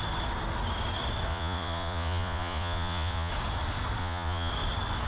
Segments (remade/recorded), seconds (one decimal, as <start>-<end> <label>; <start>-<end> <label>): 0.0-1.3 recorded; 1.3-3.3 remade; 3.3-4.0 recorded; 4.0-4.5 remade; 4.5-5.1 recorded